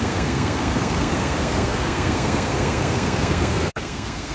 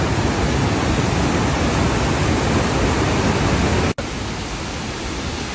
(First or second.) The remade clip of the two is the first